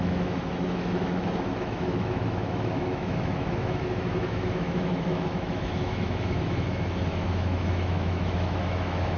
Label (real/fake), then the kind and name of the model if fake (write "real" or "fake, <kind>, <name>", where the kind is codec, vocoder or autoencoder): fake, autoencoder, DAC-VAE